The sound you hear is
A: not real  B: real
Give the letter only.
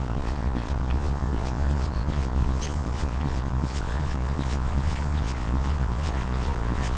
A